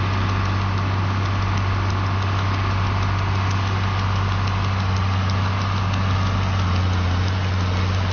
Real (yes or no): yes